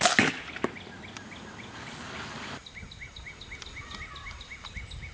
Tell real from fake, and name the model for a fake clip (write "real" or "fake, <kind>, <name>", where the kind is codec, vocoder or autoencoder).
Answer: real